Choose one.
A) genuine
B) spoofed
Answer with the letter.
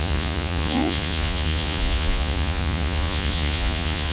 B